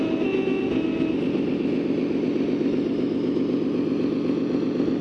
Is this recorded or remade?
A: recorded